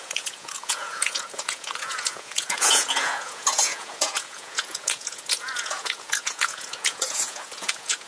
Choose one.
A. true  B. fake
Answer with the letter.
B